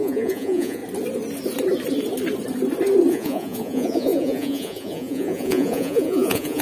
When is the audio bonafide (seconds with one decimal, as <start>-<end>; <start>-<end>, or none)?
0.8-3.1